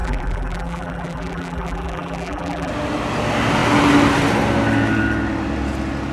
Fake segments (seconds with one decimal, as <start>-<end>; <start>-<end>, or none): 0.0-2.7